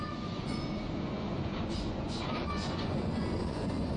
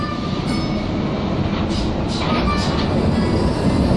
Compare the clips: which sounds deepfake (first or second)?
first